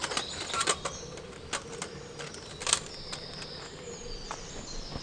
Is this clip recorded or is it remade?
recorded